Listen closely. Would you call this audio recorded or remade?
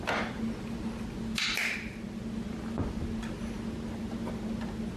recorded